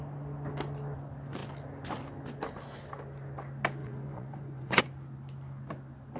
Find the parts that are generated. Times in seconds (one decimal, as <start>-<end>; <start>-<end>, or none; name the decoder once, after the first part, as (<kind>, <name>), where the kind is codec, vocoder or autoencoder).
3.8-4.8 (vocoder, Vocos)